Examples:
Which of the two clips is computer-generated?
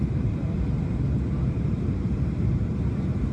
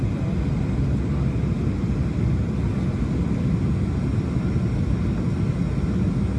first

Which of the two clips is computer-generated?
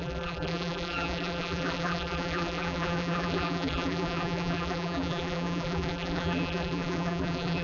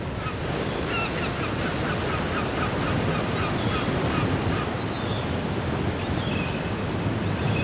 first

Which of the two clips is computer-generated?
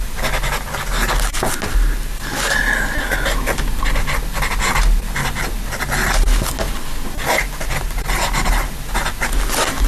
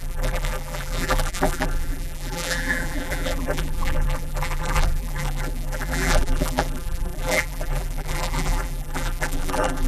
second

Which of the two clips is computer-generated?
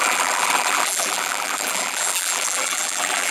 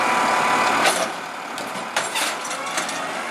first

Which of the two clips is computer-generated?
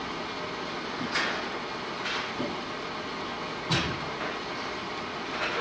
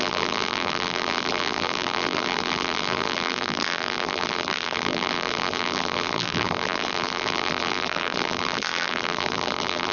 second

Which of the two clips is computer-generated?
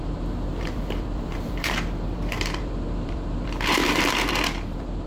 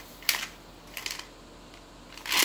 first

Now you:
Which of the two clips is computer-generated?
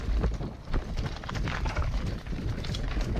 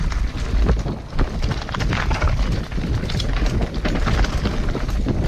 first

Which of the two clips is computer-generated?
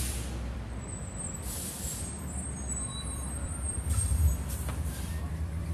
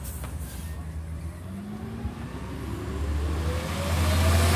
first